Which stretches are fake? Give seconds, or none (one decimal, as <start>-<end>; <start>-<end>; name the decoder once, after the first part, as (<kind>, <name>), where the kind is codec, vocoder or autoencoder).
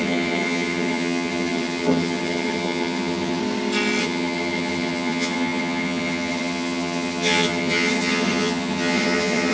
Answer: 0.0-3.4 (vocoder, HiFi-GAN); 4.0-9.5